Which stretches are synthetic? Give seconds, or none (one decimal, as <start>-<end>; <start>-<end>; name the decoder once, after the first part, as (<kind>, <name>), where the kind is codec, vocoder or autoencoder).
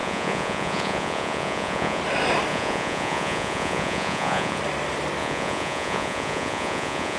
0.0-2.0 (vocoder, Vocos); 2.5-4.6; 5.2-7.2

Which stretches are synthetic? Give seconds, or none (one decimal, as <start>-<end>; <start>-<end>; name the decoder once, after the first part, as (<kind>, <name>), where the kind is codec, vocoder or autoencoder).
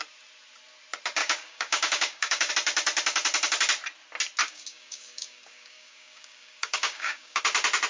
1.2-2.5 (codec, DAC); 4.4-7.4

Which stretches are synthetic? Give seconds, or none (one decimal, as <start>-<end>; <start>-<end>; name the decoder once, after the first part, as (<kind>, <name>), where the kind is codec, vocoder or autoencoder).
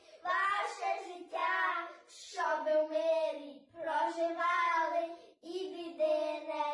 none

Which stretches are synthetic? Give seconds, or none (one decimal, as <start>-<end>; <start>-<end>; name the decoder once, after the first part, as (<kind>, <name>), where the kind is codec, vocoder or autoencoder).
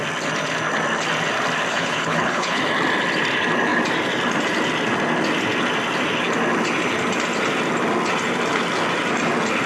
1.7-2.6 (codec, HILCodec)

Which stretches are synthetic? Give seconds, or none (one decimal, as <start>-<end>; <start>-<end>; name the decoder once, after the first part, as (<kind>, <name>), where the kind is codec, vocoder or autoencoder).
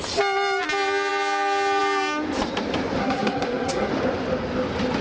3.0-3.9 (codec, SNAC)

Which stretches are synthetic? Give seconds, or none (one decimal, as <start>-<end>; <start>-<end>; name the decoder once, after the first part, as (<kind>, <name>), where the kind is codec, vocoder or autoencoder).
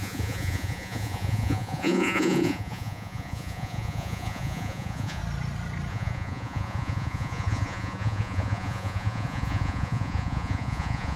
0.0-5.2 (vocoder, Vocos); 5.9-11.2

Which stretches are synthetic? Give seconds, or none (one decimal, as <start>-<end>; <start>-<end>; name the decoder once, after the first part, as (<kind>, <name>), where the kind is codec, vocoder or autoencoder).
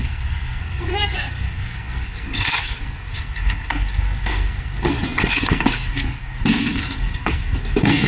0.0-8.1 (codec, SNAC)